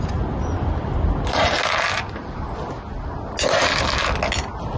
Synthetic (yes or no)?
no